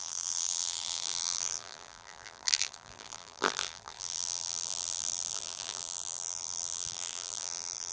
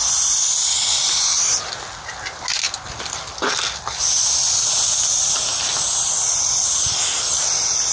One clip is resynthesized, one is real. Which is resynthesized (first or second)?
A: first